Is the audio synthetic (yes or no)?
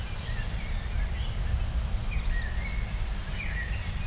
no